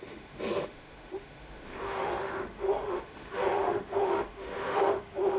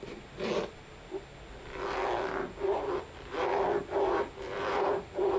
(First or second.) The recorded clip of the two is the second